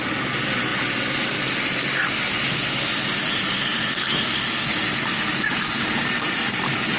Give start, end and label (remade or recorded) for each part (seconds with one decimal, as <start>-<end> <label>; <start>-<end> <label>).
0.0-7.0 recorded